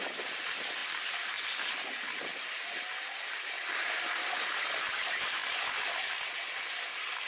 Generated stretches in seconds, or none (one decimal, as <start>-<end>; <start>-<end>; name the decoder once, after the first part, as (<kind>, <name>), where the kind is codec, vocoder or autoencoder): none